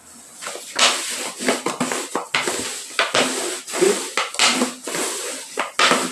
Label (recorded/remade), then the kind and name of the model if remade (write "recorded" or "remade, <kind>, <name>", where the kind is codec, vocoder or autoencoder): recorded